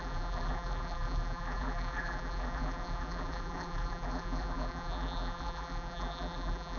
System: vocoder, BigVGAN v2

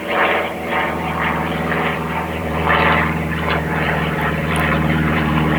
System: vocoder, BigVGAN v2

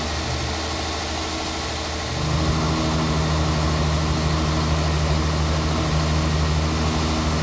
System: none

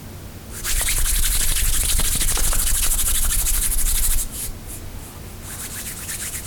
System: none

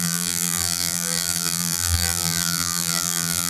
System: vocoder, BigVGAN v2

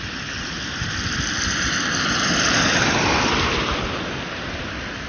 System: vocoder, BigVGAN v2